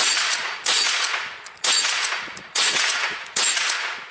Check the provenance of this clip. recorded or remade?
remade